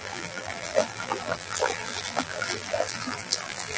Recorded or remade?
remade